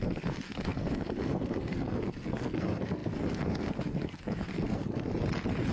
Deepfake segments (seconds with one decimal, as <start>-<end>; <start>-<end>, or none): 0.0-5.1

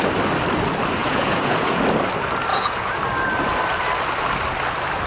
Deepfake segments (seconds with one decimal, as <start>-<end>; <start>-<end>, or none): 1.0-1.8; 2.5-3.0

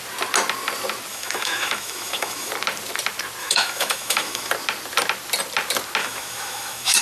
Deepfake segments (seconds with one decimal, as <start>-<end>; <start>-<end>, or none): 1.1-2.5; 3.4-4.5; 6.0-7.0

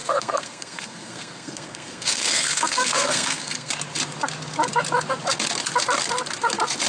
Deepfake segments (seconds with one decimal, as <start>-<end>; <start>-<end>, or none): 0.0-3.7

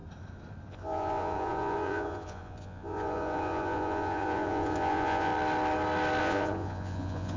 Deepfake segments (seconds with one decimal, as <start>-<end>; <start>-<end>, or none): 0.7-5.3; 6.2-7.4